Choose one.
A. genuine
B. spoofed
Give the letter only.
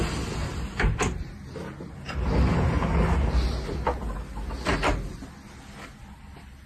A